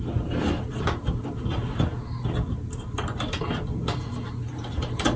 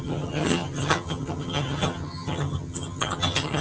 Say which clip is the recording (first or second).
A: first